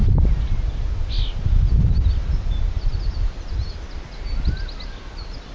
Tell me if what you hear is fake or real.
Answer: real